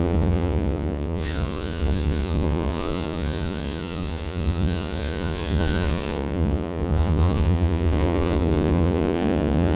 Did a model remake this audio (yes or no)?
yes